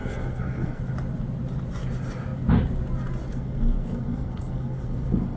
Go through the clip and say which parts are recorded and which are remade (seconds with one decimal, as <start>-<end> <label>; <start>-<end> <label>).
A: 0.0-0.8 remade; 0.8-3.3 recorded; 3.3-5.4 remade